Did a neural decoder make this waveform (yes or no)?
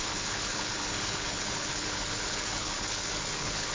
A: yes